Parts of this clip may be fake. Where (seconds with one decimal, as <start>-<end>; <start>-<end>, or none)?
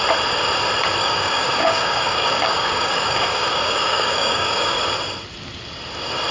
1.0-4.8